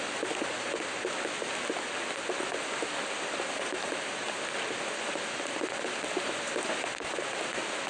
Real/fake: real